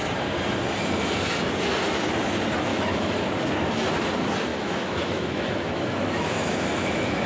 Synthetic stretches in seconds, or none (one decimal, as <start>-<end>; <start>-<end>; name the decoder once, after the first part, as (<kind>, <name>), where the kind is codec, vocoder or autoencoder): 2.7-3.3 (autoencoder, DAC-VAE); 4.5-7.3